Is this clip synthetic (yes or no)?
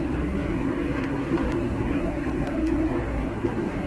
yes